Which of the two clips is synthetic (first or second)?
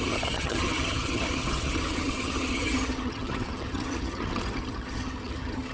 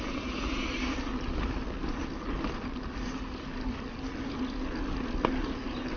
first